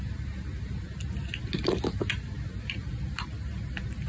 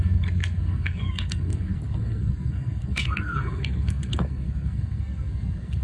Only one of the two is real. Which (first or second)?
first